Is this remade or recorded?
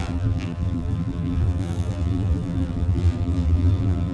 remade